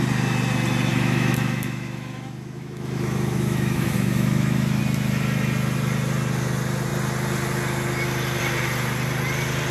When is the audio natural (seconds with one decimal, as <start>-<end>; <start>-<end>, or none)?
0.0-0.9; 4.8-9.7